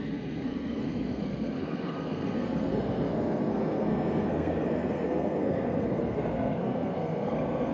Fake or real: fake